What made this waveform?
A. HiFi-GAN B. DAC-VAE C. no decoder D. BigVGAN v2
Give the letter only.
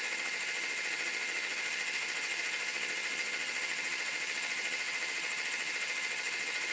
A